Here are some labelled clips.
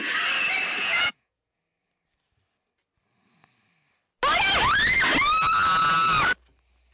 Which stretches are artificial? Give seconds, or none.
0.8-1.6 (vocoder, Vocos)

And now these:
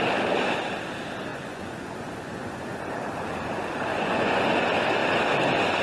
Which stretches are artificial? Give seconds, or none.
1.3-2.8 (vocoder, Vocos); 3.9-4.5

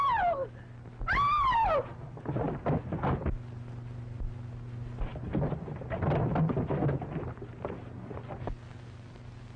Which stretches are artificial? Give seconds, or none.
none

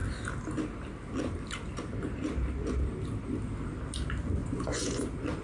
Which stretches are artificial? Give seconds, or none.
4.4-5.0 (vocoder, Vocos)

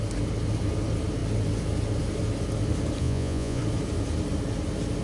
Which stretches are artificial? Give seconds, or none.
3.0-3.6 (vocoder, Vocos)